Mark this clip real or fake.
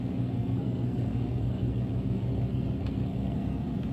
fake